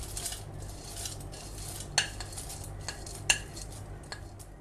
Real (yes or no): yes